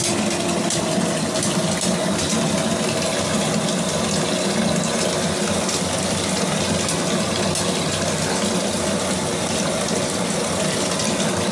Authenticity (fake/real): real